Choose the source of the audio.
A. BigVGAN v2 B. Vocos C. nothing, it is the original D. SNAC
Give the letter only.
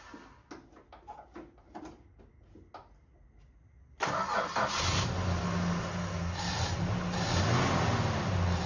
C